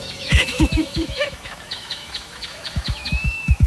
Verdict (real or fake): fake